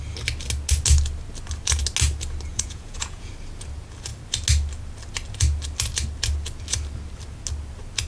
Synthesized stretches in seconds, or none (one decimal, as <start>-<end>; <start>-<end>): 2.5-3.3